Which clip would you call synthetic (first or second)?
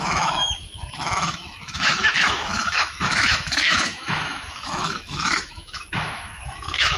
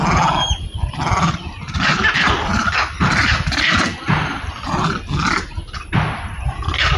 first